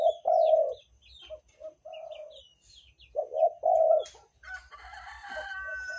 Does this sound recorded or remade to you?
recorded